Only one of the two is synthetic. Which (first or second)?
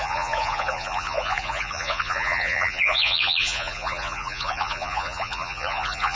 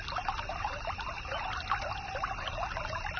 first